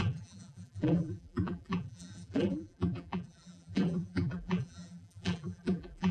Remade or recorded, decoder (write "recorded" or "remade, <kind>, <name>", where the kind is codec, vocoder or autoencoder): remade, vocoder, BigVGAN v2